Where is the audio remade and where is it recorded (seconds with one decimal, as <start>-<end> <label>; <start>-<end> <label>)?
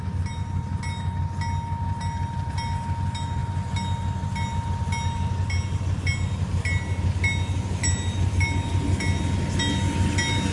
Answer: 0.0-10.5 recorded